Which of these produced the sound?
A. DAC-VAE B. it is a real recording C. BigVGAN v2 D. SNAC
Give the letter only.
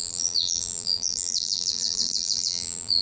C